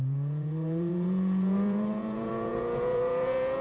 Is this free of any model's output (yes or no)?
no